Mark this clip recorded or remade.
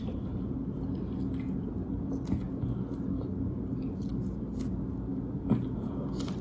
recorded